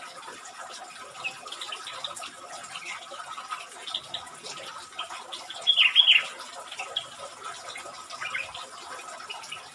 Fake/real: real